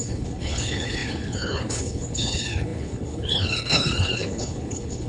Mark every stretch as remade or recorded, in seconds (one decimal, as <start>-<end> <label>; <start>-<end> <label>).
0.0-5.1 remade